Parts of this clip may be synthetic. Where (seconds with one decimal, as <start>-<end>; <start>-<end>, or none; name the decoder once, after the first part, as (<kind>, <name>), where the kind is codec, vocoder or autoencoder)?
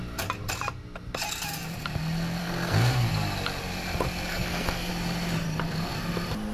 2.4-3.1 (codec, SNAC); 4.3-4.9